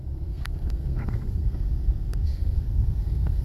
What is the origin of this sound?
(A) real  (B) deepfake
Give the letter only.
B